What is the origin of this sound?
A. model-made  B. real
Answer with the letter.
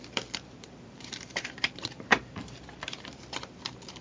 A